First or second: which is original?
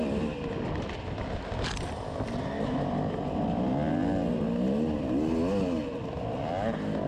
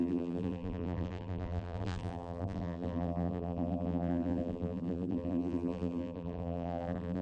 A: first